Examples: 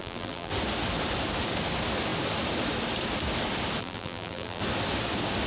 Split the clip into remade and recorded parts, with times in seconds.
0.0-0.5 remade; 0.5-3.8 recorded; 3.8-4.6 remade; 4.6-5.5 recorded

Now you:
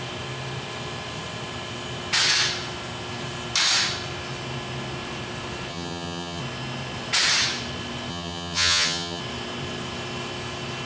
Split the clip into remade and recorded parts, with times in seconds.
0.0-5.7 recorded; 5.7-6.4 remade; 6.4-8.1 recorded; 8.1-9.2 remade; 9.2-10.9 recorded